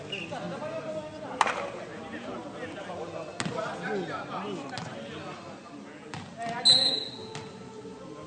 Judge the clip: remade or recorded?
recorded